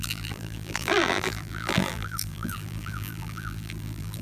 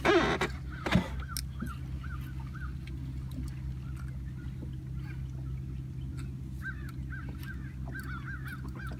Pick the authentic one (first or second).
second